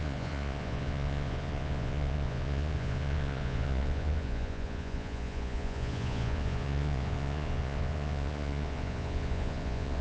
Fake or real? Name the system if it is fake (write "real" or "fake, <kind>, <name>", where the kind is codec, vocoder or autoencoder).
fake, vocoder, Vocos